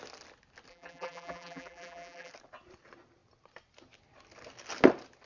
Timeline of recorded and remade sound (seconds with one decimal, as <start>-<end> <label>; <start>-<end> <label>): 0.0-0.7 recorded; 0.7-2.3 remade; 2.3-5.3 recorded